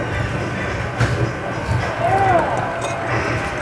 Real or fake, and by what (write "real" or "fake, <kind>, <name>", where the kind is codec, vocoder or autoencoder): real